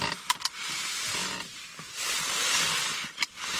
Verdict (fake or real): real